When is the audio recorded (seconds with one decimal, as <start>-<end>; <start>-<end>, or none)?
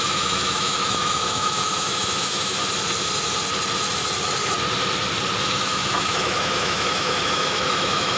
2.6-5.4